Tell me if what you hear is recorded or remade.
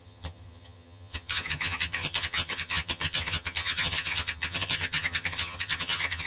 remade